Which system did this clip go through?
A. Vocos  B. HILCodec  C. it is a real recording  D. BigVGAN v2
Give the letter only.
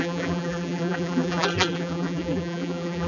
D